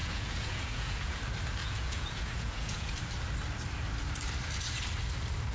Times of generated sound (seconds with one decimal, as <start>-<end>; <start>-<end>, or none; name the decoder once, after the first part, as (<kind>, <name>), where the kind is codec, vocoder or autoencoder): 0.0-1.2 (vocoder, Vocos); 1.6-2.9